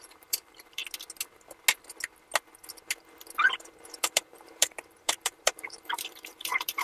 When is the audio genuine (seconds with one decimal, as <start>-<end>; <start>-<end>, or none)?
0.8-4.0